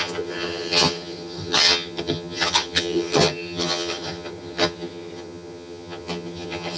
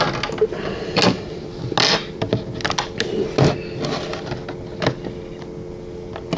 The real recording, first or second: second